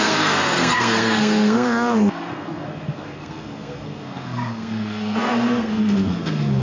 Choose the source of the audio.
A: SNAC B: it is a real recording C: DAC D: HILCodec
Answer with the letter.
A